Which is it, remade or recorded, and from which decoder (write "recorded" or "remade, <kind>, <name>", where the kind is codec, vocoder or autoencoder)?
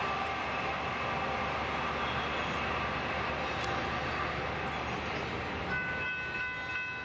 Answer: recorded